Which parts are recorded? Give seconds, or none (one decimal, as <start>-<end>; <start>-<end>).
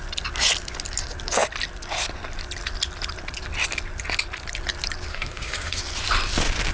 0.0-5.1; 5.8-6.7